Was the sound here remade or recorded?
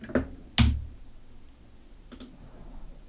recorded